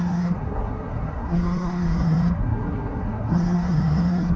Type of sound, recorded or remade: remade